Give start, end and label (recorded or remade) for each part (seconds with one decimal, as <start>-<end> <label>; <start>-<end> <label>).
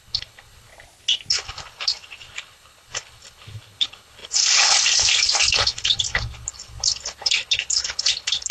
0.0-0.7 remade; 0.7-1.3 recorded; 1.3-8.5 remade